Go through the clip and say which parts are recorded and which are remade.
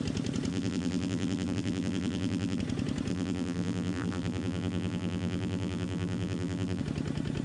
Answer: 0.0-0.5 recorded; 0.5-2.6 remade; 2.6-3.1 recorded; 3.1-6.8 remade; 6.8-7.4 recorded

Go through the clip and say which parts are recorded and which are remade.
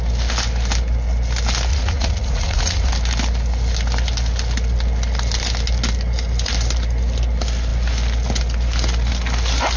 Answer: 0.0-1.7 recorded; 1.7-2.9 remade; 2.9-9.8 recorded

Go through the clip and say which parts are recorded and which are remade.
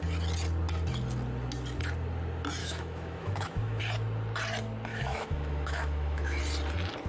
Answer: 0.0-2.6 recorded; 2.6-3.8 remade; 3.8-4.9 recorded; 4.9-6.4 remade; 6.4-7.1 recorded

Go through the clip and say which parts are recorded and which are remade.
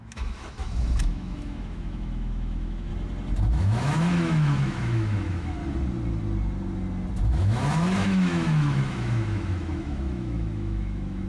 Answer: 0.0-2.9 remade; 2.9-3.5 recorded; 3.5-5.6 remade; 5.6-7.3 recorded; 7.3-11.3 remade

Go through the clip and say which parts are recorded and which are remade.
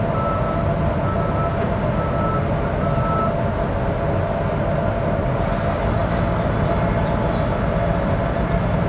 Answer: 0.0-8.9 recorded